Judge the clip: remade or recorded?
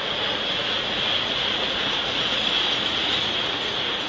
remade